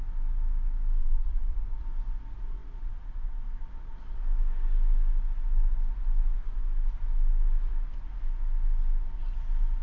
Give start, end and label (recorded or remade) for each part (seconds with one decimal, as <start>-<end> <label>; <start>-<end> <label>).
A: 0.0-1.0 recorded; 1.0-1.8 remade; 1.8-9.8 recorded